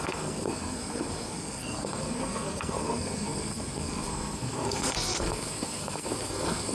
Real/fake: fake